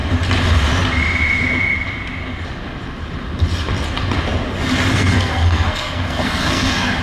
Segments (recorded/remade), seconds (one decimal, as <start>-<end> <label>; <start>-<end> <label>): 0.0-4.9 recorded; 4.9-7.0 remade